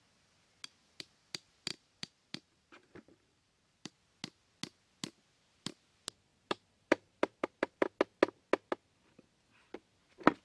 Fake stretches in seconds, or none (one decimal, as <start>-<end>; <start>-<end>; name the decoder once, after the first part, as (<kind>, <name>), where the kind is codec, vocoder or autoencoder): 1.7-3.9 (vocoder, BigVGAN v2); 6.3-7.9